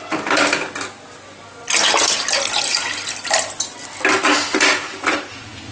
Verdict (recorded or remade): recorded